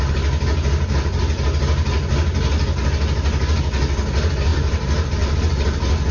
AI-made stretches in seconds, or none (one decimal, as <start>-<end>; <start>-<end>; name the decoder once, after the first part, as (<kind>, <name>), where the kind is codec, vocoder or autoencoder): none